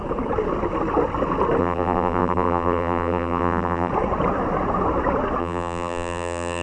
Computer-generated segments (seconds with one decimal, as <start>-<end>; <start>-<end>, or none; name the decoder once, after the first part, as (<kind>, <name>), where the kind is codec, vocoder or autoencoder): 1.6-3.9 (vocoder, BigVGAN v2); 5.4-6.6